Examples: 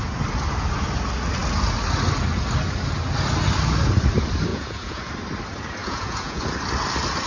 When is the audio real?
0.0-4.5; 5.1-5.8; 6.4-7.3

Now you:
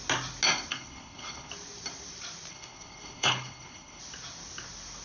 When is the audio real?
0.0-0.7; 1.5-2.5; 4.0-5.0

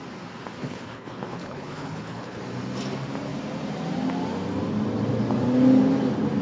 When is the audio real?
0.0-0.6; 2.4-6.4

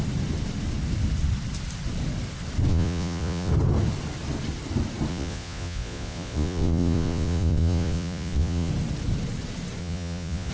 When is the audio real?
0.0-2.7; 3.5-5.1; 8.7-9.8

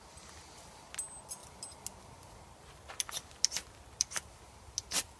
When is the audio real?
0.0-5.2

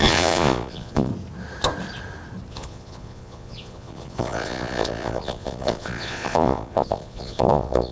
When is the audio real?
1.1-2.5